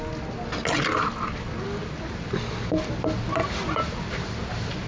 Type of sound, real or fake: real